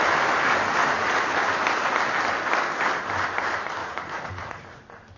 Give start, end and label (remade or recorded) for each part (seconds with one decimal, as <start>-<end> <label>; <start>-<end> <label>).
0.0-0.8 recorded; 0.8-1.3 remade; 1.3-3.8 recorded; 3.8-4.6 remade; 4.6-5.2 recorded